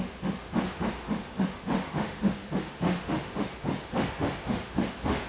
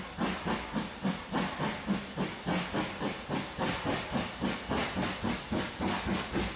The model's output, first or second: first